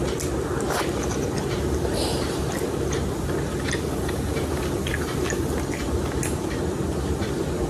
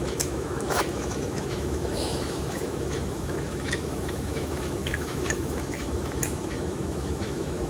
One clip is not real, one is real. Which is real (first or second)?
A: first